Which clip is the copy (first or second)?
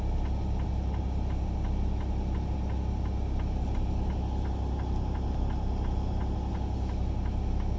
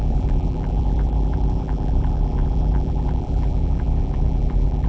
second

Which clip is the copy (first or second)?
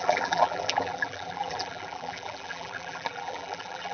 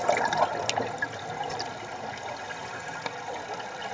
first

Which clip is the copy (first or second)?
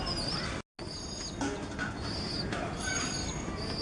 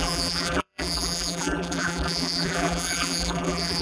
second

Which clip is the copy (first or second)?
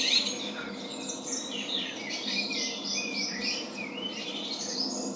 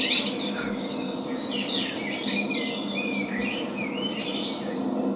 first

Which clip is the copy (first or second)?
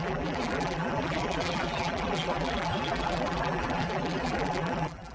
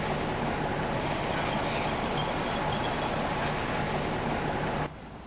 first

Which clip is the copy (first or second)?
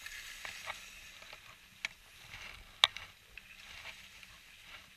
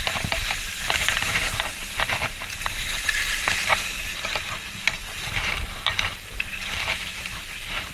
second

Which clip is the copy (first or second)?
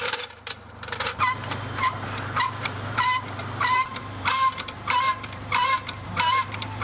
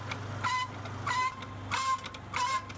first